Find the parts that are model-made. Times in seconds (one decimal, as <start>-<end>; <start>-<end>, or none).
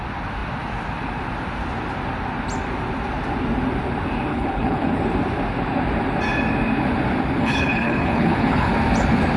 4.3-5.0; 7.4-8.7